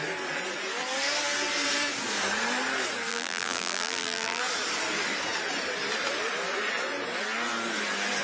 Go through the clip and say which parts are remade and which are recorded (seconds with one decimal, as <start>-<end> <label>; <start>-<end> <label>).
0.0-3.1 recorded; 3.1-4.4 remade; 4.4-8.2 recorded